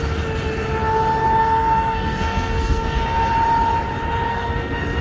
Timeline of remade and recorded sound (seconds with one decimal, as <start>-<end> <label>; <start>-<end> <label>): 0.0-1.4 recorded; 1.4-3.3 remade; 3.3-4.3 recorded; 4.3-5.0 remade